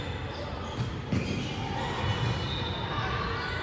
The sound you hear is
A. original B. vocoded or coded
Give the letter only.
A